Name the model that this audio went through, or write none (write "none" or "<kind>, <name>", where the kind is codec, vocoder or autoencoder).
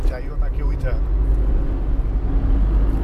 none